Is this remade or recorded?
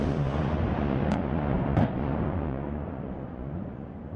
remade